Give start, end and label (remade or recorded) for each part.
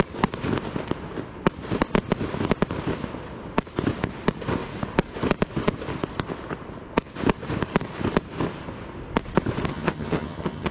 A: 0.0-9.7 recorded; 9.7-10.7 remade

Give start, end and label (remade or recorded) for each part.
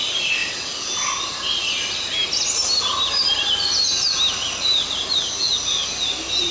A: 0.0-6.5 recorded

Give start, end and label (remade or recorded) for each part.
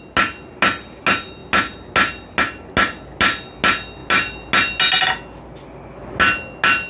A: 0.0-6.9 recorded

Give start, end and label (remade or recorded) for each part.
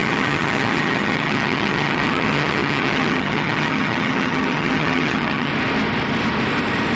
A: 0.0-5.5 remade; 5.5-7.0 recorded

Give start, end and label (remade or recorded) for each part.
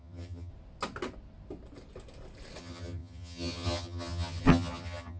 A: 0.0-0.5 remade; 0.5-2.6 recorded; 2.6-5.2 remade